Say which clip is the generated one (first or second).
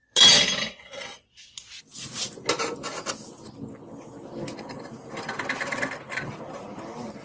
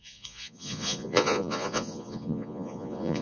second